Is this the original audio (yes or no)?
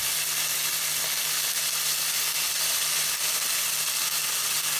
yes